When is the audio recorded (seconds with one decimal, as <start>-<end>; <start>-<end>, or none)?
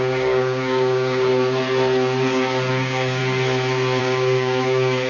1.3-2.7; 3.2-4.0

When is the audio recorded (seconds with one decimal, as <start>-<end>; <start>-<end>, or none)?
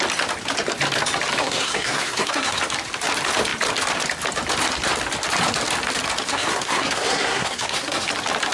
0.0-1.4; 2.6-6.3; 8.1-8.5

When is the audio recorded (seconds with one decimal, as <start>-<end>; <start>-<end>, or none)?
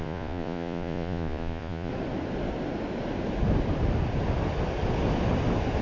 1.9-5.8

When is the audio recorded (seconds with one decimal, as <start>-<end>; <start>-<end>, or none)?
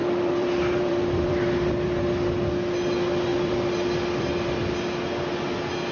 2.0-3.3; 4.7-5.9